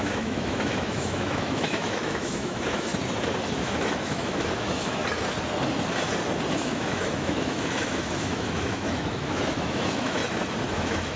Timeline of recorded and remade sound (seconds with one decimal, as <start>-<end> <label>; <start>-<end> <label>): 0.0-2.9 remade; 2.9-3.5 recorded; 3.5-5.0 remade; 5.0-6.5 recorded; 6.5-10.2 remade; 10.2-10.7 recorded; 10.7-11.2 remade